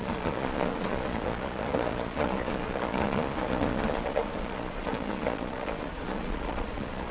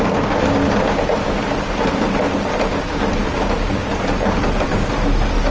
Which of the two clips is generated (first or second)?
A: first